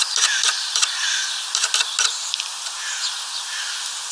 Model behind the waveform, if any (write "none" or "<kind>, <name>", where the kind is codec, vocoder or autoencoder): none